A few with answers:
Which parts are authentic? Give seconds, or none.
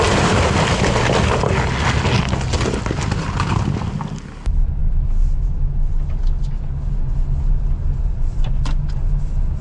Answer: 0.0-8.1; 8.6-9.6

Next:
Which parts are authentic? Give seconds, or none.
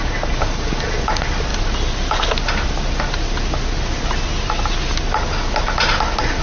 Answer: 0.0-6.4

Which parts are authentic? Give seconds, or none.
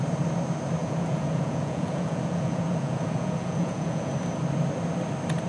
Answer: 0.0-0.8; 4.1-5.5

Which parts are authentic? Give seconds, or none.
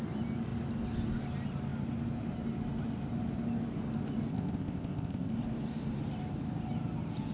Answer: 0.0-4.3; 5.3-7.3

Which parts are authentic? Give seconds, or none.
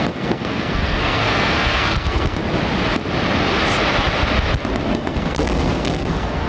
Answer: 2.4-4.9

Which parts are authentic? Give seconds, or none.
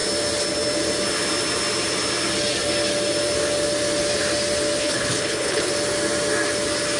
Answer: 0.0-4.8; 5.7-7.0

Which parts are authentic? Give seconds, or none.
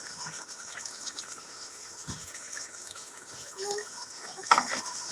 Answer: none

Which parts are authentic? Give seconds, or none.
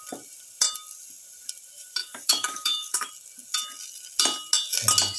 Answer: 0.0-2.0; 3.1-5.2